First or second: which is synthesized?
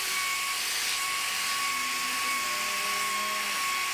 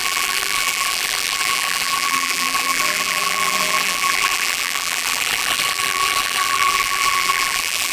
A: second